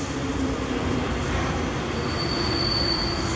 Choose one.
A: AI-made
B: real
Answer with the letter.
A